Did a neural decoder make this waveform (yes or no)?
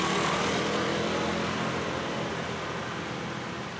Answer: no